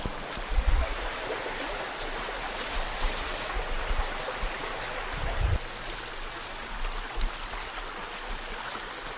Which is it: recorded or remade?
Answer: recorded